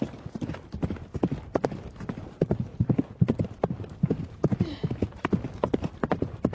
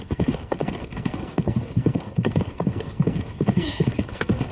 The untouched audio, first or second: first